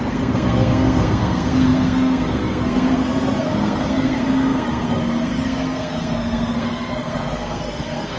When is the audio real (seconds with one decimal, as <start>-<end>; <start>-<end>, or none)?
none

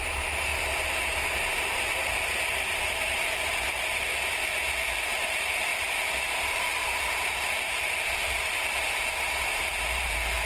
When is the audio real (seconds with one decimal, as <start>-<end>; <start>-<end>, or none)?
0.5-3.0; 4.1-5.1; 5.7-6.4

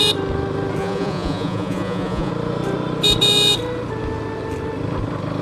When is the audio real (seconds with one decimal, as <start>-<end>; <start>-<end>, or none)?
0.0-0.8; 2.3-5.4

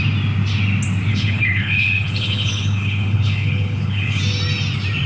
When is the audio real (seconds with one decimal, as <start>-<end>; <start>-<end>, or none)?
0.0-1.1; 4.2-5.1

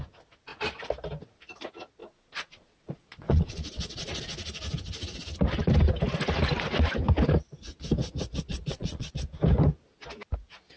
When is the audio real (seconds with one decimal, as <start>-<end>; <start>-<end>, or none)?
0.0-2.0; 4.2-8.5; 9.1-10.8

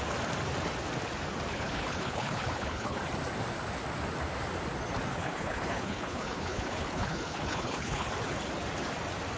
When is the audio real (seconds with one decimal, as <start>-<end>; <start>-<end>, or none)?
0.0-1.5; 3.0-5.1; 8.1-9.4

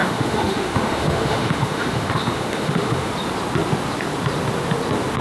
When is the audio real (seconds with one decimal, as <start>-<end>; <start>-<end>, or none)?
3.1-5.2

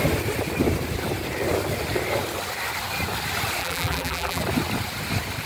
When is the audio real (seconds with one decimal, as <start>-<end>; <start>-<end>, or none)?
0.0-3.6; 4.4-5.5